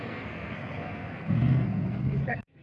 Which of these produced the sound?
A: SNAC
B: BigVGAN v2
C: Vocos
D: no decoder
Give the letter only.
A